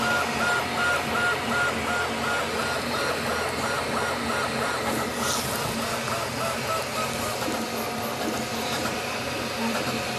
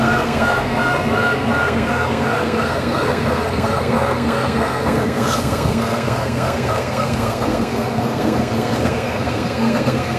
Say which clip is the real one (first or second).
first